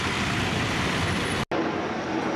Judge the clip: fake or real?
real